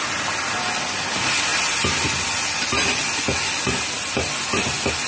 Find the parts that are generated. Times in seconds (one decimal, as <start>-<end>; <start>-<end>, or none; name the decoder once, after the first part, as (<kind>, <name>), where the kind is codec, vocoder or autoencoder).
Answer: 1.5-4.6 (vocoder, BigVGAN v2)